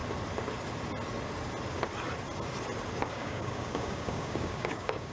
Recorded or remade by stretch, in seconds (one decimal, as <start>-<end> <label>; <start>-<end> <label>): 0.0-3.1 recorded; 3.1-5.1 remade